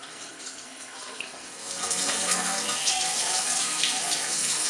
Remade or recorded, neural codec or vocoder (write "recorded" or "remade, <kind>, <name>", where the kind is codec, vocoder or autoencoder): remade, codec, SNAC